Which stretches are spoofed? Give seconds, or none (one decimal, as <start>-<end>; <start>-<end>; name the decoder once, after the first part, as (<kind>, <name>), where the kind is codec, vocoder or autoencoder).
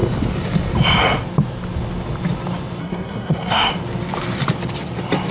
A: 2.8-3.7 (codec, SNAC)